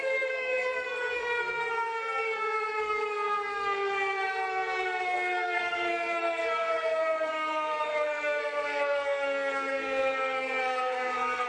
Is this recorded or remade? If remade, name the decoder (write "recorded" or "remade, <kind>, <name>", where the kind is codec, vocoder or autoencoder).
remade, codec, SNAC